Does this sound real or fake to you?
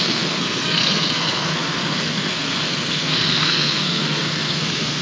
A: fake